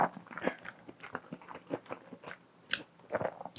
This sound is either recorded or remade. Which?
recorded